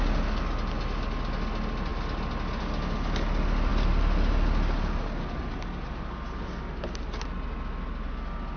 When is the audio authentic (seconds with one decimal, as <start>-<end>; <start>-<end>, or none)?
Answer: 0.0-8.6